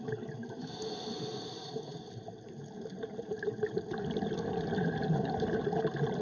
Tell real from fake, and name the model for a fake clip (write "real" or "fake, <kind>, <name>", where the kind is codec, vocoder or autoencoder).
real